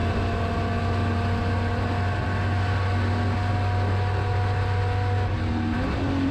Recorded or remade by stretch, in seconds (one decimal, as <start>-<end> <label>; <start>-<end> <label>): 0.0-6.3 recorded